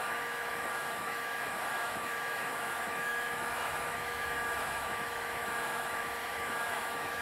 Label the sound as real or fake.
fake